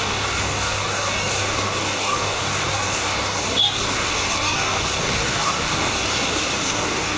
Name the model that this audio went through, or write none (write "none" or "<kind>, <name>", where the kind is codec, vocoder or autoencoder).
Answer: codec, DAC